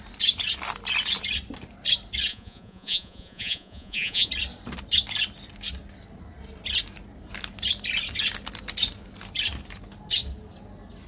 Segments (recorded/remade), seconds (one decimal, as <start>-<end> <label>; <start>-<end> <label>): 0.0-2.3 recorded; 2.3-4.3 remade; 4.3-11.1 recorded

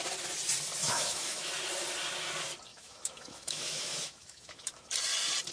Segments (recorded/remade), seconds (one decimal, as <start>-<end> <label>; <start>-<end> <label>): 0.0-0.8 recorded; 0.8-1.5 remade; 1.5-2.7 recorded; 2.7-4.9 remade; 4.9-5.5 recorded

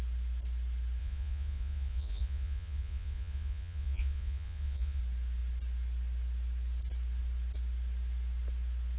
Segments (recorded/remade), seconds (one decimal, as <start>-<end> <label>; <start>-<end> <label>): 0.0-1.0 recorded; 1.0-5.0 remade; 5.0-9.0 recorded

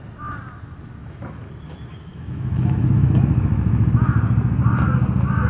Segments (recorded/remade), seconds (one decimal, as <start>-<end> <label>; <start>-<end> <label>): 0.0-1.0 recorded; 1.0-1.5 remade; 1.5-2.1 recorded; 2.1-3.8 remade; 3.8-5.5 recorded

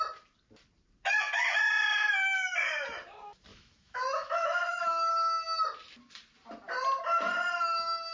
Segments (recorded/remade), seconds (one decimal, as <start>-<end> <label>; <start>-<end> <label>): 0.0-3.5 recorded; 3.5-5.1 remade; 5.1-8.1 recorded

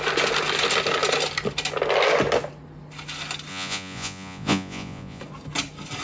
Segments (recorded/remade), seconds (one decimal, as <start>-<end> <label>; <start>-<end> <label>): 0.0-3.5 recorded; 3.5-5.2 remade; 5.2-6.0 recorded

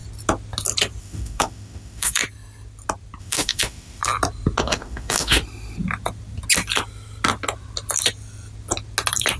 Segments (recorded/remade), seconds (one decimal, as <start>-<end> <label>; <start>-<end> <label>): 0.0-1.0 recorded; 1.0-2.2 remade; 2.2-3.2 recorded; 3.2-4.0 remade; 4.0-4.6 recorded; 4.6-5.4 remade; 5.4-9.4 recorded

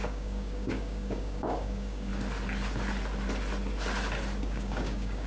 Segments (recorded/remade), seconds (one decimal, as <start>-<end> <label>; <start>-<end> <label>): 0.0-2.1 remade; 2.1-4.4 recorded; 4.4-5.3 remade